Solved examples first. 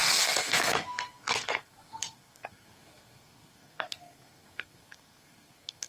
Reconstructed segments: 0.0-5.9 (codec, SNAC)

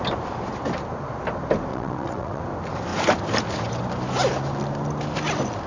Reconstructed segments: 1.7-2.4 (vocoder, WaveNeXt)

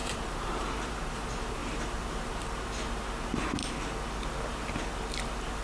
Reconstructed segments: 0.0-0.9 (vocoder, BigVGAN v2); 1.6-2.3

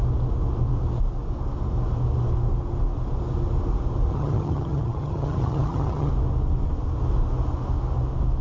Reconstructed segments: 4.1-6.1 (vocoder, HiFi-GAN)